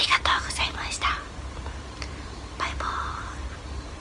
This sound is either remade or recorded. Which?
recorded